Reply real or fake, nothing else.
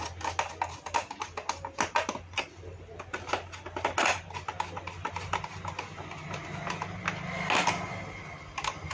real